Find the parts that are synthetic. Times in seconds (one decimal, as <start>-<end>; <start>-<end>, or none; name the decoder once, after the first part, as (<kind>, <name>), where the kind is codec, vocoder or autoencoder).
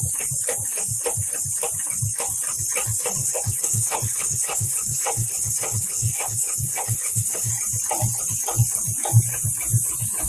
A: 3.2-7.5 (codec, HILCodec)